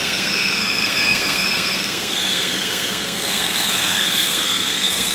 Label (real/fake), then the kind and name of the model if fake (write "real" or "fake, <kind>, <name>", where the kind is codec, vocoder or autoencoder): fake, codec, SNAC